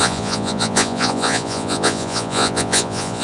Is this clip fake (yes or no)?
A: yes